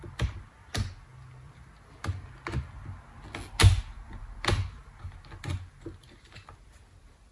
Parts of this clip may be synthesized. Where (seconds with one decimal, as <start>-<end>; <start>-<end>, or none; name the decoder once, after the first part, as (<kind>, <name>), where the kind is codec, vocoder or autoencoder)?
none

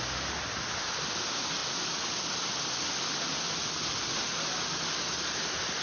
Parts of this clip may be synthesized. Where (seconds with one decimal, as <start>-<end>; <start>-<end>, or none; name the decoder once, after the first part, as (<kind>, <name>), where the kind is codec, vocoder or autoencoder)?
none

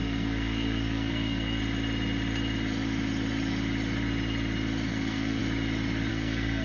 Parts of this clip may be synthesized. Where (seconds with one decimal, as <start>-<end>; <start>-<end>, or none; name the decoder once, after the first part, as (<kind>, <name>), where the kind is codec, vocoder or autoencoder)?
0.0-1.6 (codec, SNAC); 4.9-5.4; 6.1-6.6

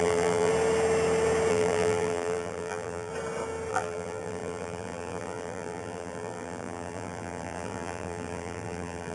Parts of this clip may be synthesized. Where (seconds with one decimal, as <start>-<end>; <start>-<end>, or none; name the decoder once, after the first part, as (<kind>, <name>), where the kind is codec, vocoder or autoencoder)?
0.0-0.5 (vocoder, BigVGAN v2); 1.5-3.1; 3.7-9.1

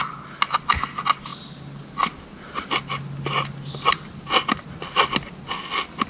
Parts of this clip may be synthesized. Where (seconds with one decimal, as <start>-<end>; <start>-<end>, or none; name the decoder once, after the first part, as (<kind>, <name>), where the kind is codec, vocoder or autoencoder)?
none